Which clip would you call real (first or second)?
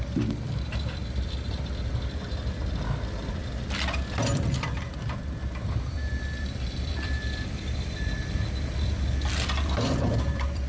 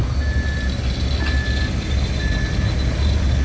second